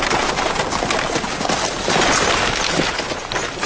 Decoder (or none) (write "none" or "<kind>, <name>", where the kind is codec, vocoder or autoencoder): none